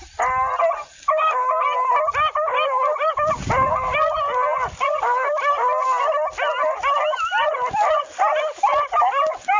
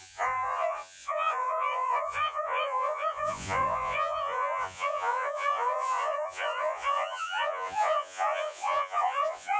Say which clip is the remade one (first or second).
second